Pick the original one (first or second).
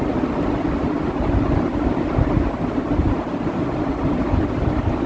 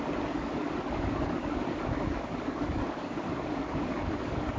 first